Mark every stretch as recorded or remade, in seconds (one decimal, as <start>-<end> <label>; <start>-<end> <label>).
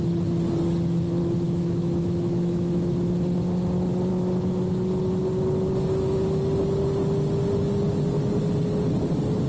0.0-1.2 recorded; 1.2-2.9 remade; 2.9-9.5 recorded